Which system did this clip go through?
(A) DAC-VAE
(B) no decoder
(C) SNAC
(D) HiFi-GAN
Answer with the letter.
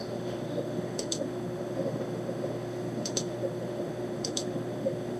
A